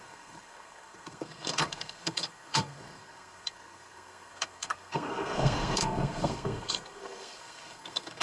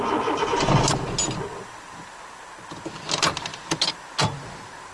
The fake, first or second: first